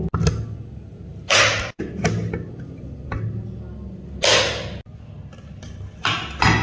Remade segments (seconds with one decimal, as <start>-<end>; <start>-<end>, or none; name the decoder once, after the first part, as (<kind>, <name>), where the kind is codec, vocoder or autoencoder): 1.1-2.0 (vocoder, BigVGAN v2)